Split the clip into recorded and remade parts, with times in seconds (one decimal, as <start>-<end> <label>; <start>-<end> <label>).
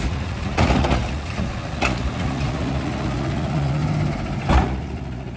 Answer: 0.0-3.8 remade; 3.8-4.5 recorded; 4.5-5.4 remade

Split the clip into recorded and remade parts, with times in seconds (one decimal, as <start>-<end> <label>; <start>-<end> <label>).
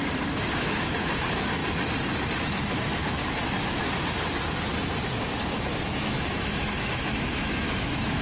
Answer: 0.0-1.6 remade; 1.6-2.4 recorded; 2.4-3.2 remade; 3.2-5.1 recorded; 5.1-8.2 remade